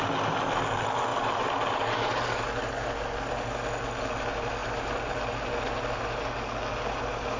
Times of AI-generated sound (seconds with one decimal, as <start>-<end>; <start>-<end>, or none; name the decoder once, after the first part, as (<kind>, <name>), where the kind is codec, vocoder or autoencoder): none